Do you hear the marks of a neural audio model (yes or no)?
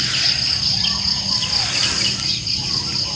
no